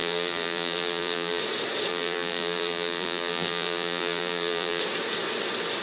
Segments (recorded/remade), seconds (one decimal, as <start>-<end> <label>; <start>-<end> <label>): 0.0-1.4 remade; 1.4-1.9 recorded; 1.9-4.8 remade; 4.8-5.8 recorded